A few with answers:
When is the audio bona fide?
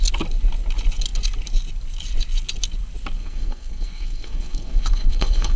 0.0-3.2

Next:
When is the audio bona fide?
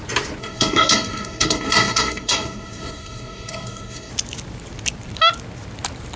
0.0-0.4; 4.1-6.2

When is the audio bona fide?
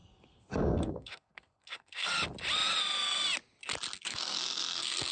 2.1-4.0